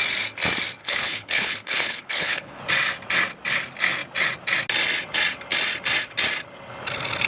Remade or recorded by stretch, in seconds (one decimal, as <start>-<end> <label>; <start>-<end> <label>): 0.0-0.8 recorded; 0.8-2.6 remade; 2.6-7.3 recorded